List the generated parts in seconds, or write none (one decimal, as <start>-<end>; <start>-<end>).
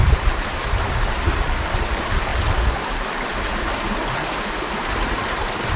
0.0-2.3; 4.5-5.8